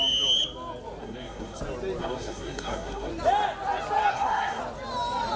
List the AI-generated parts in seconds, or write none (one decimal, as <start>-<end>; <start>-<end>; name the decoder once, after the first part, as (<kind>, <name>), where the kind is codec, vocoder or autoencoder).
1.0-1.6 (codec, SNAC); 2.0-3.1; 4.1-4.6